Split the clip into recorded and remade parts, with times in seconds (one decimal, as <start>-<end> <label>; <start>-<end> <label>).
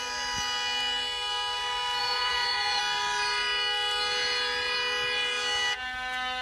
0.0-2.0 recorded; 2.0-2.8 remade; 2.8-6.4 recorded